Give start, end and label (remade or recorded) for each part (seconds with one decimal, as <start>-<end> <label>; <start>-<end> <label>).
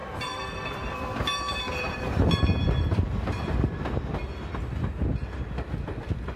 0.0-3.8 remade; 3.8-6.4 recorded